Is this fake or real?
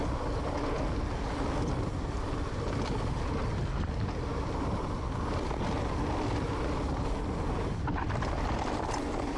real